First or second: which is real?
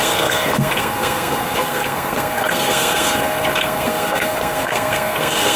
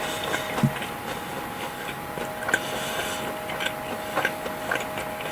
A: second